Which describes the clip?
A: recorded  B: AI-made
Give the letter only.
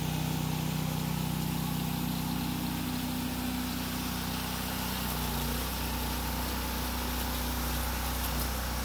A